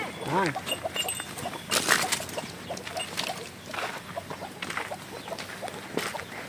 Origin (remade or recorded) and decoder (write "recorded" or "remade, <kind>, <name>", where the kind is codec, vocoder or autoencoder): recorded